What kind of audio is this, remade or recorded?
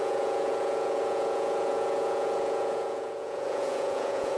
remade